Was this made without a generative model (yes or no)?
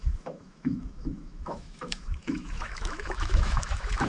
no